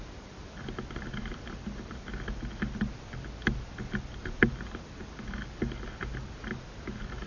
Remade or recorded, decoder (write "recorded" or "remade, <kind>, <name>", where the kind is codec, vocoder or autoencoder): recorded